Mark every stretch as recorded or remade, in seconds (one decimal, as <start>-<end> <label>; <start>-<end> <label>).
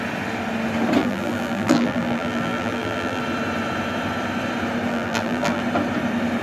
0.0-1.0 recorded; 1.0-3.2 remade; 3.2-4.9 recorded; 4.9-5.6 remade; 5.6-6.4 recorded